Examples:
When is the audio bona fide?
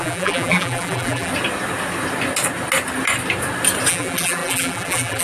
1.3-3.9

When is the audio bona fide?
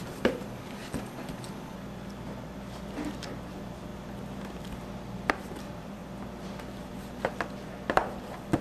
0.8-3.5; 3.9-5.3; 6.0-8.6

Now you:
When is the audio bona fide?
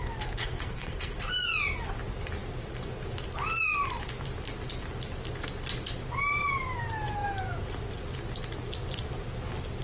0.0-0.4; 1.3-9.8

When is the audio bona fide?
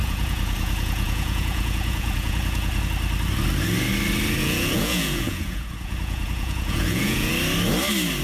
2.8-4.4; 7.3-8.2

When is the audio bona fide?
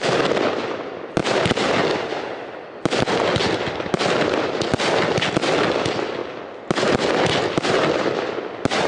0.0-8.9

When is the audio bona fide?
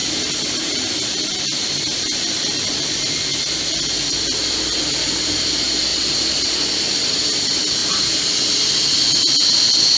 0.0-1.4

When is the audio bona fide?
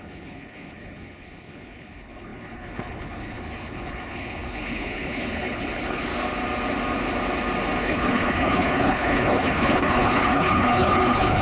6.1-7.8